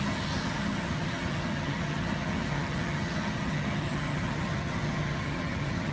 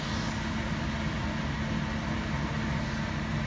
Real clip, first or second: second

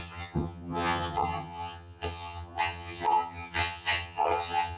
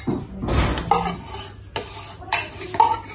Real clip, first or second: second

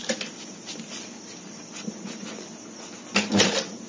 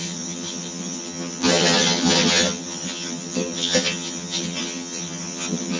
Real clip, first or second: first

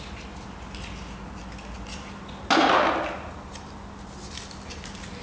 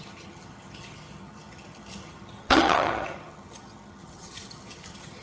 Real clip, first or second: first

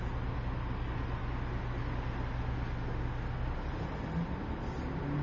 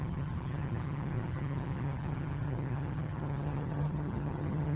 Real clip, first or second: first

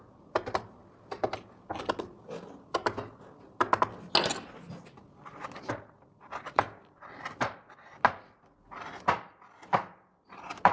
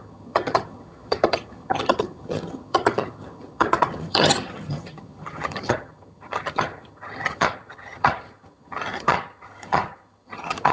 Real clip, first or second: first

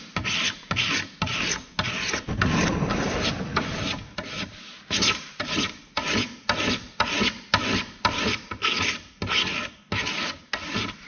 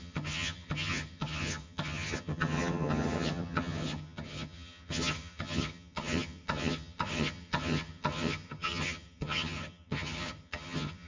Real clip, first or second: first